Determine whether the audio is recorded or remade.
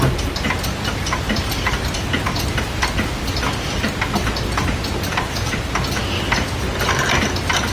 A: recorded